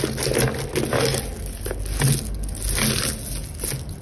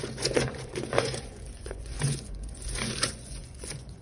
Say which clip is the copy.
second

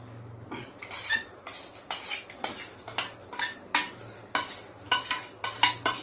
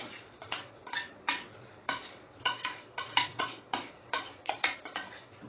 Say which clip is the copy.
second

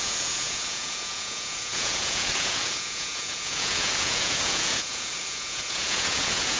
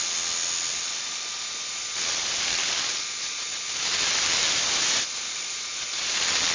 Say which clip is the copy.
first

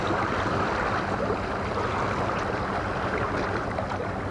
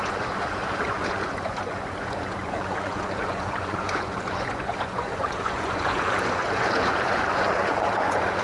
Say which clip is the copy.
second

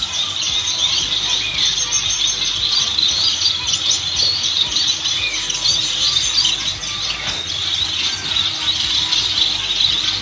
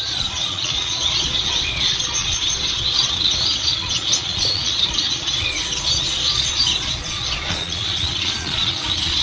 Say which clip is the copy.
second